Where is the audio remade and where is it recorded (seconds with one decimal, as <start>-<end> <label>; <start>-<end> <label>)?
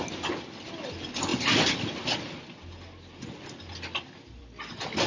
0.0-5.1 recorded